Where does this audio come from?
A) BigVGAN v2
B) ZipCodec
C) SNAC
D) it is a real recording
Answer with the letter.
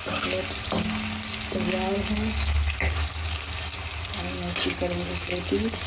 D